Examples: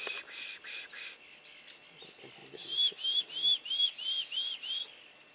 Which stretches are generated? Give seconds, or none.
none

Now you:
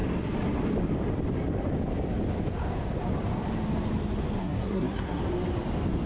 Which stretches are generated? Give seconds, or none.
4.4-5.2 (codec, SNAC)

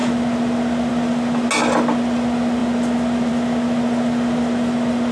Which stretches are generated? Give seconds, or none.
none

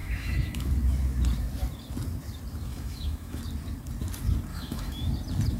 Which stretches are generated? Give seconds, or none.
0.0-0.7 (autoencoder, DAC-VAE); 2.7-3.4; 4.5-5.1

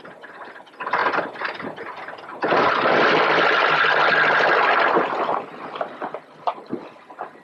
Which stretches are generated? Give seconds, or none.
2.3-6.0 (vocoder, BigVGAN v2)